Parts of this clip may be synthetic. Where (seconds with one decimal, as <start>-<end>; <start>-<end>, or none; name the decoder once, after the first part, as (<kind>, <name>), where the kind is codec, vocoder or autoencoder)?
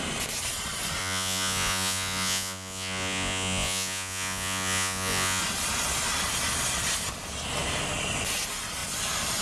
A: 1.0-5.4 (vocoder, Vocos)